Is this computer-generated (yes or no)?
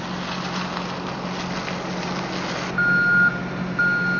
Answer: no